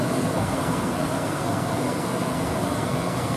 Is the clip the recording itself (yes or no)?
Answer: no